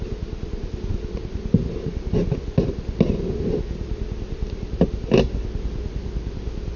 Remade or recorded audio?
recorded